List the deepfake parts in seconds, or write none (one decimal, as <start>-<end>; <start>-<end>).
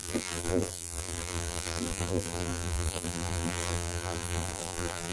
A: 0.0-5.1